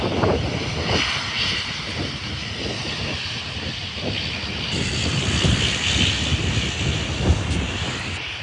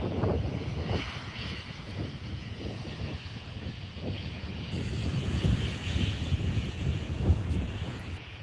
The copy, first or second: second